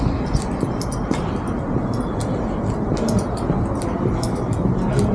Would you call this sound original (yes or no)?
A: yes